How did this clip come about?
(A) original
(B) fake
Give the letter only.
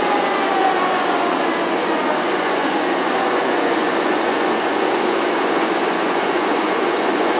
B